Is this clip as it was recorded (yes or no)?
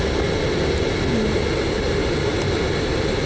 yes